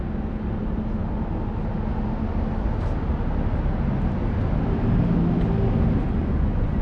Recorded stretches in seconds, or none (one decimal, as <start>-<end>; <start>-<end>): 0.0-6.2